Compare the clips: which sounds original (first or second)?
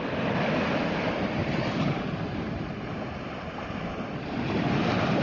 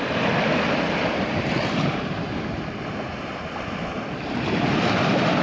second